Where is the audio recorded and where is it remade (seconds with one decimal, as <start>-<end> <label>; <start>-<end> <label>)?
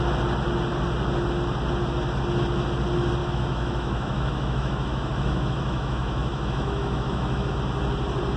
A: 0.0-3.2 recorded; 3.2-7.5 remade; 7.5-8.4 recorded